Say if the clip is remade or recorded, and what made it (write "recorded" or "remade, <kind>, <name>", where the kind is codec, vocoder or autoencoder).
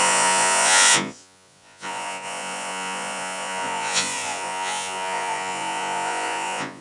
remade, vocoder, Vocos